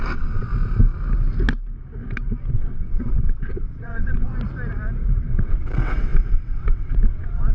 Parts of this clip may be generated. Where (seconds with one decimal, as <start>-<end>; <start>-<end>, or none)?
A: 0.0-0.5; 2.5-4.3; 5.2-7.5